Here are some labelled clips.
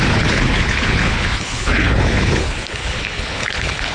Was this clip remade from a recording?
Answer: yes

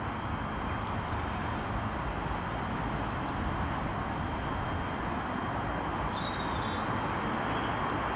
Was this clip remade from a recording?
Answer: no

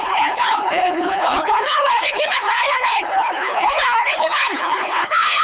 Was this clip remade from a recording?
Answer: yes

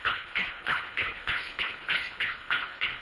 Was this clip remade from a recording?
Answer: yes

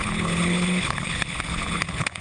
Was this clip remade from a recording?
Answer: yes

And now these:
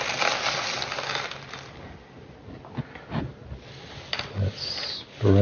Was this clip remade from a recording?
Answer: no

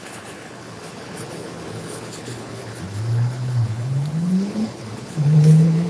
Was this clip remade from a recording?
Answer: yes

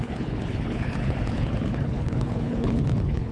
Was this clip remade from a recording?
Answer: yes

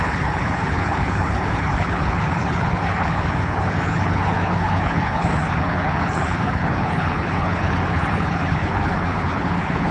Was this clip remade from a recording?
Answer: yes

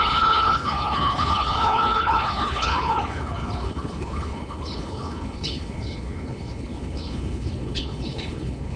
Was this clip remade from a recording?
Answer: yes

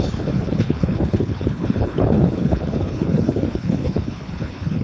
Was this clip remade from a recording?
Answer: yes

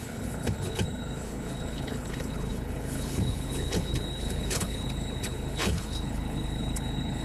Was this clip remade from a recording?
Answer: yes